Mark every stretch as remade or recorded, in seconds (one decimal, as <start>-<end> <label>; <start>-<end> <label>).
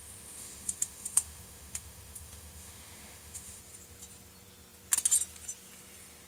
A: 0.0-3.6 remade; 3.6-6.3 recorded